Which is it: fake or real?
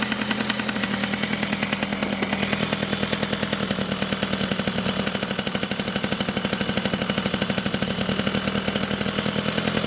real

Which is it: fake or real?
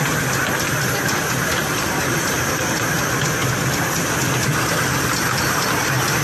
real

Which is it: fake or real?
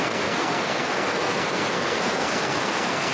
fake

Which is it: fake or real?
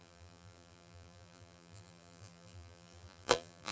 fake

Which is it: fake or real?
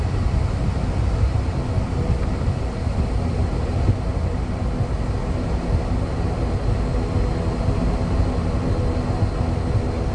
real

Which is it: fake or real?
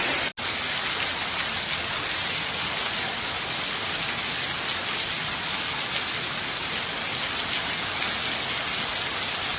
real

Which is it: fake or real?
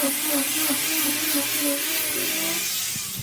real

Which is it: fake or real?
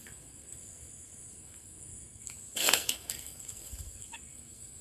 fake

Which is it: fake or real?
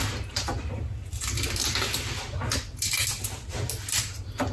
real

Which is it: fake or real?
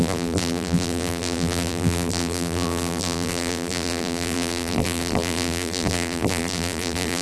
fake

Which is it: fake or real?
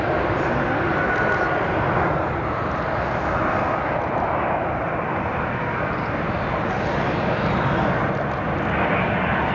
real